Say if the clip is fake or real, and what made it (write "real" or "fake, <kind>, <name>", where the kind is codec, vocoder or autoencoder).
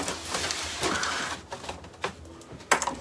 real